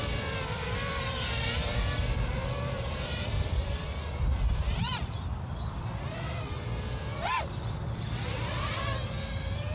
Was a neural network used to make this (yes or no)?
yes